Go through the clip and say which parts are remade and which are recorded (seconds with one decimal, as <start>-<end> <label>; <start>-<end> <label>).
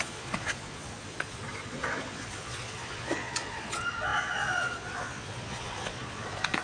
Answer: 0.0-6.6 remade